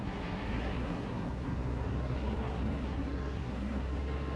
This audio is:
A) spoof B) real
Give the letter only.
A